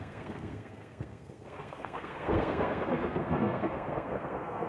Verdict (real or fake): fake